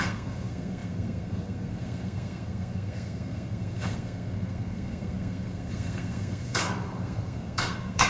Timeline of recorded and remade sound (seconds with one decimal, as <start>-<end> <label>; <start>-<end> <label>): 0.0-8.1 remade